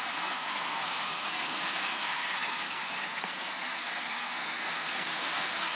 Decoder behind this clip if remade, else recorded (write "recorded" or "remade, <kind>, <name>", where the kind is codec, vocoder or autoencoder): remade, codec, SNAC